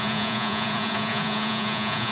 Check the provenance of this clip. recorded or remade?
remade